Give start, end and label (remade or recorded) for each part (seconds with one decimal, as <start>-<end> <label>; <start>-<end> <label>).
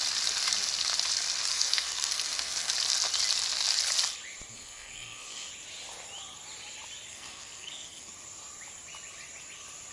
0.0-1.5 recorded; 1.5-2.7 remade; 2.7-4.5 recorded; 4.5-5.5 remade; 5.5-7.1 recorded; 7.1-8.1 remade; 8.1-9.9 recorded